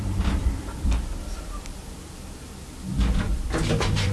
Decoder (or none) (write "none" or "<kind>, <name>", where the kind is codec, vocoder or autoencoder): vocoder, BigVGAN v2